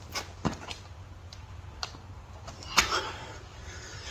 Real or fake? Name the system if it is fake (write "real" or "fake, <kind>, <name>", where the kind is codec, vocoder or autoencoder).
real